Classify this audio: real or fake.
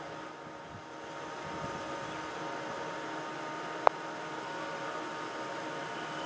real